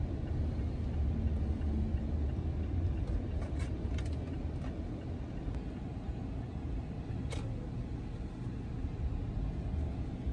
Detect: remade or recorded recorded